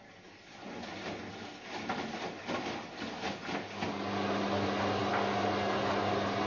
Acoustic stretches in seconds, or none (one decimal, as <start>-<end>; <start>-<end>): 0.0-6.5